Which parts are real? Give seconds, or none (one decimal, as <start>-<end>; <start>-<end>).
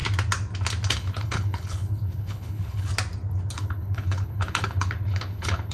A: 0.0-0.9; 2.9-3.5